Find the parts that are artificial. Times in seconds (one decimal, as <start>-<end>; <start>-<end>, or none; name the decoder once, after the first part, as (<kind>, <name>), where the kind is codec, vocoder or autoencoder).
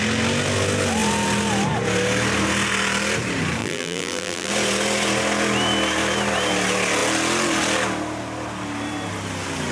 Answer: 3.6-4.5 (vocoder, BigVGAN v2)